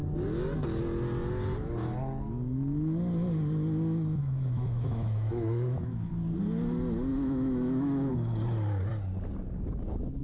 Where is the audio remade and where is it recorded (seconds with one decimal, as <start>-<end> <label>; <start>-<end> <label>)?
0.0-4.2 recorded; 4.2-6.1 remade; 6.1-7.1 recorded; 7.1-8.1 remade; 8.1-10.2 recorded